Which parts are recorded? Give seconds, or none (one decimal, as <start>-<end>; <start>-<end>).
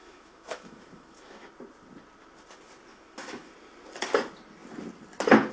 1.5-2.9; 3.5-5.5